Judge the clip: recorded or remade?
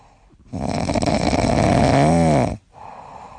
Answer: recorded